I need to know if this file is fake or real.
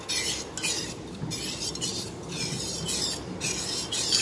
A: real